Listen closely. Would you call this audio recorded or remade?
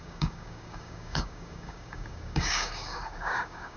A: remade